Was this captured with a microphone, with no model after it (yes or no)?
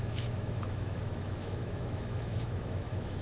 no